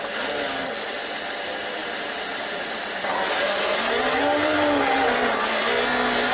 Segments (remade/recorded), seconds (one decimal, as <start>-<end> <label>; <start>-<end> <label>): 0.0-1.8 recorded; 1.8-5.6 remade; 5.6-6.3 recorded